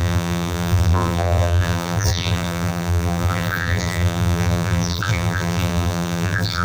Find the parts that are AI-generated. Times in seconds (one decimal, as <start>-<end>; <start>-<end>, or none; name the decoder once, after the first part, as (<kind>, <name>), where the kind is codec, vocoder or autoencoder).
0.0-6.6 (vocoder, BigVGAN v2)